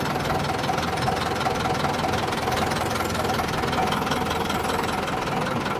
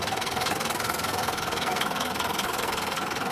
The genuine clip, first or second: first